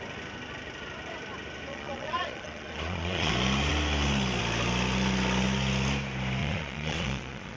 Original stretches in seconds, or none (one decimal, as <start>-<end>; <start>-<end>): 0.0-1.7; 3.3-6.4